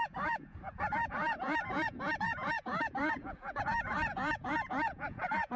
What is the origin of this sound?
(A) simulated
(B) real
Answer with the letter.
A